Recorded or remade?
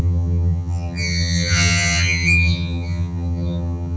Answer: remade